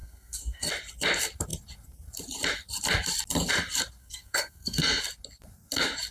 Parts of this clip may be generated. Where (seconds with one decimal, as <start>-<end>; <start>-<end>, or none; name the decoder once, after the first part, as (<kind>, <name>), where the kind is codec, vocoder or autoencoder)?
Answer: 0.0-0.7 (codec, SNAC); 4.0-5.0